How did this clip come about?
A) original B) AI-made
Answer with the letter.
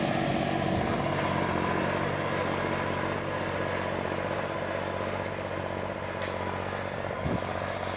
A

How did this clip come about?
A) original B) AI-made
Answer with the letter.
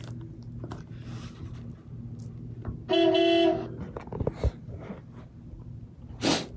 A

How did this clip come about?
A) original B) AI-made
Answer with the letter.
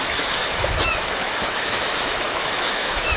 B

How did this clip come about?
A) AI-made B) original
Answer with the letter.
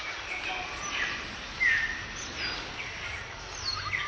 B